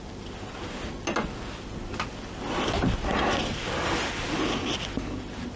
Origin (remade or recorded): recorded